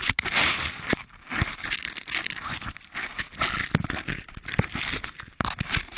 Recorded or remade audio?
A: recorded